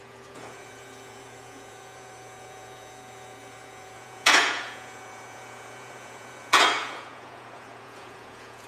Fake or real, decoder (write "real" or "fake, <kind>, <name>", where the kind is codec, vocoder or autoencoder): fake, vocoder, Vocos